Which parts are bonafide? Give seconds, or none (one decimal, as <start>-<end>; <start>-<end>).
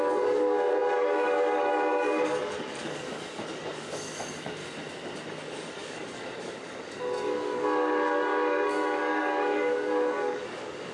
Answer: 4.6-5.3